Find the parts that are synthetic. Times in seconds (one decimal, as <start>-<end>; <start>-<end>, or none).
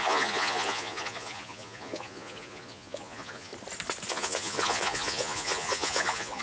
0.0-3.5; 4.1-6.4